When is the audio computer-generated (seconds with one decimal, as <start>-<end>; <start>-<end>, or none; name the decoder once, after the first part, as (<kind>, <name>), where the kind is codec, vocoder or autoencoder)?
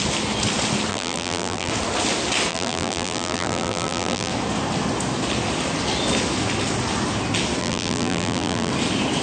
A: 0.9-1.7 (vocoder, BigVGAN v2); 2.5-4.3; 7.6-8.7